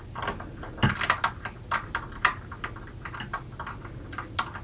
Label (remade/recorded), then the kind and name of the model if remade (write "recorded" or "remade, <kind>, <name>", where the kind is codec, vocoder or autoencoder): recorded